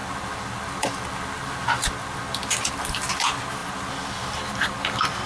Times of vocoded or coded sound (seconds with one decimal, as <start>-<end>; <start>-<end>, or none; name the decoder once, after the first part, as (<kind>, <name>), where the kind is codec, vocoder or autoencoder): none